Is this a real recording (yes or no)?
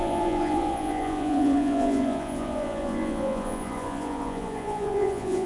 no